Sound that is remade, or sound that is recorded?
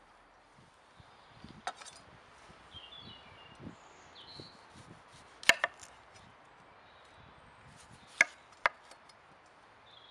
recorded